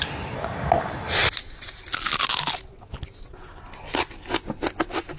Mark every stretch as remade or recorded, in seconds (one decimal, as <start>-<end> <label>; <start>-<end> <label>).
0.0-5.2 recorded